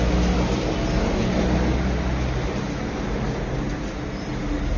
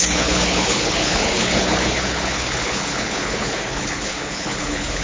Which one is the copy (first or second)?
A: second